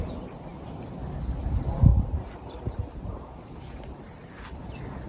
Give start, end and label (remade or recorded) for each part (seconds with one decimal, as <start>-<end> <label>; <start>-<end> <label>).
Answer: 0.0-1.9 recorded; 1.9-4.4 remade; 4.4-5.1 recorded